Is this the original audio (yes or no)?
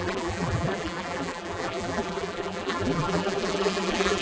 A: no